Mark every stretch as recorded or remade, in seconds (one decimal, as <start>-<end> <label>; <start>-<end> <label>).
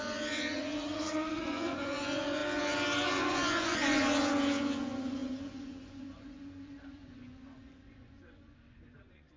0.0-2.4 remade; 2.4-3.1 recorded; 3.1-9.4 remade